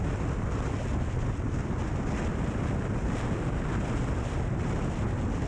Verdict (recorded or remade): recorded